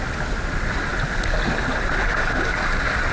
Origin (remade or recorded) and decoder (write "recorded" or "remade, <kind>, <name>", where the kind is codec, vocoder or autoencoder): recorded